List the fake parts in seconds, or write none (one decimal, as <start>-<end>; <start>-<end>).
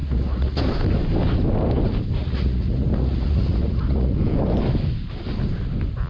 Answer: 0.0-0.6; 2.2-4.2